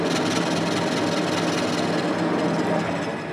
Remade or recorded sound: recorded